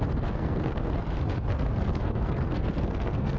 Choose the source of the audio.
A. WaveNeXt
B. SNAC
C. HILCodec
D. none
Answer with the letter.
B